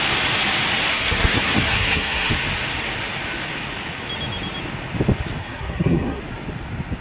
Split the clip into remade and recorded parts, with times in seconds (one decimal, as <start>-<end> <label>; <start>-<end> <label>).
0.0-0.9 recorded; 0.9-2.3 remade; 2.3-5.4 recorded; 5.4-6.2 remade; 6.2-7.0 recorded